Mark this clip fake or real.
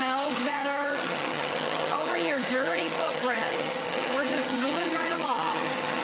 fake